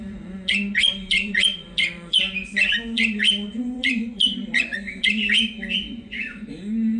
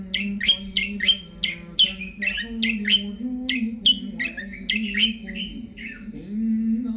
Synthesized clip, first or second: first